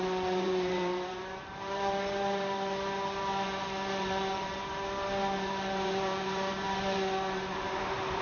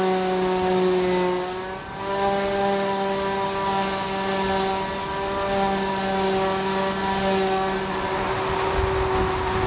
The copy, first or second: first